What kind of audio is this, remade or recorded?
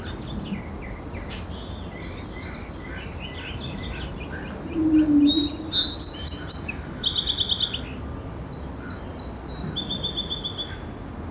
recorded